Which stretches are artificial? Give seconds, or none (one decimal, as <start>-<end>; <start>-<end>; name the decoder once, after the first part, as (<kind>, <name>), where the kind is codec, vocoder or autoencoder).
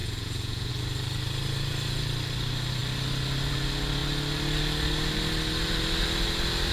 0.0-0.7 (vocoder, Vocos)